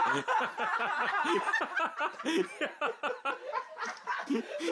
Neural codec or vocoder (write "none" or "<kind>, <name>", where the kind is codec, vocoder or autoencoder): none